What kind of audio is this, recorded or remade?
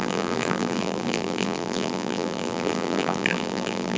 remade